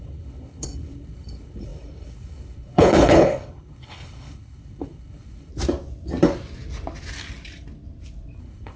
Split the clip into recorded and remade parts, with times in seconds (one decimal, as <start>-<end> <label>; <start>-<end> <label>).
0.0-5.5 remade; 5.5-8.4 recorded; 8.4-8.8 remade